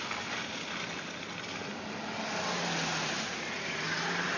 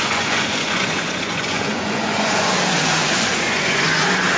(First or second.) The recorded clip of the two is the first